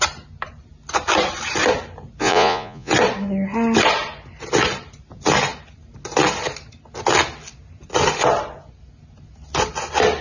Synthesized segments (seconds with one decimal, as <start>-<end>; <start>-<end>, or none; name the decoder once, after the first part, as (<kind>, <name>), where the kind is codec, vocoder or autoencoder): 2.2-2.9 (vocoder, Vocos)